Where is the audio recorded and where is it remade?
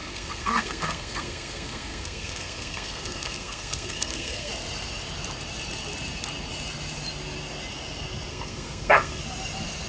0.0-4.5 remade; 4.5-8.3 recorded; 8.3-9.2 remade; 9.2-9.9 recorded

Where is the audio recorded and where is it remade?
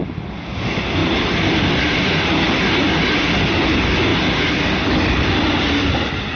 0.0-6.4 recorded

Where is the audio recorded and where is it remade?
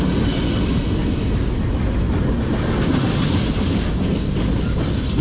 0.0-5.2 recorded